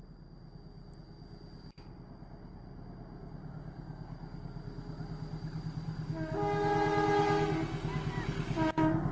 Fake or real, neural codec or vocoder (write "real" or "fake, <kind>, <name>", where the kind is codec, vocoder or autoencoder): real